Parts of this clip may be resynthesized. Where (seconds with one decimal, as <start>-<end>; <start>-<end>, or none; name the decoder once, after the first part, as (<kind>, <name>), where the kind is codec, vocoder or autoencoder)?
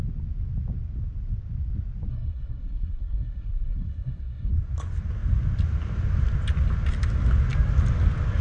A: 2.1-4.5 (codec, SNAC)